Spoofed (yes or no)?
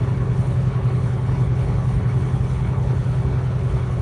yes